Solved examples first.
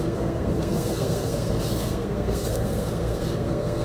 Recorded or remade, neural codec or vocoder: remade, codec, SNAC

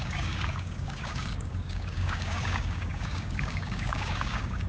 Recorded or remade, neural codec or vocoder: remade, codec, DAC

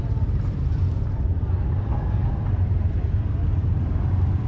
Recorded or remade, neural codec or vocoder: remade, vocoder, BigVGAN v2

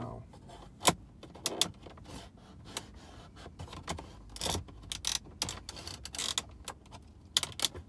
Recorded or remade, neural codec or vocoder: recorded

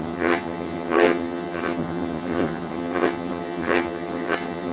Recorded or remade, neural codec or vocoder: remade, vocoder, HiFi-GAN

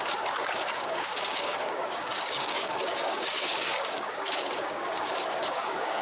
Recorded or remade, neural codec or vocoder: remade, codec, DAC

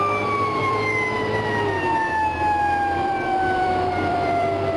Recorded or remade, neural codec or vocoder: remade, vocoder, BigVGAN v2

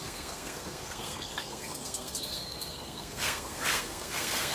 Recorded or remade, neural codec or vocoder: remade, codec, SNAC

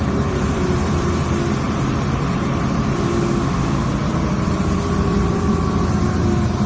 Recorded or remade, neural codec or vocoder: recorded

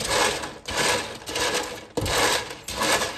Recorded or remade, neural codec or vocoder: recorded